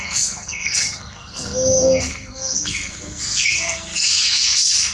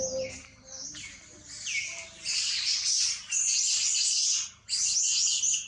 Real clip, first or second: second